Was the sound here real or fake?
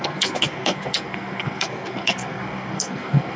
fake